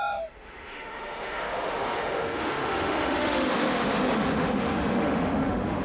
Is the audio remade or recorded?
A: remade